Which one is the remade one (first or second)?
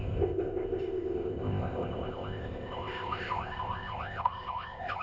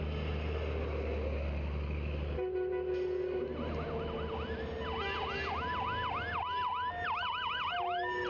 first